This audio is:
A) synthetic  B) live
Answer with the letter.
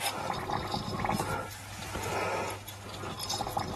B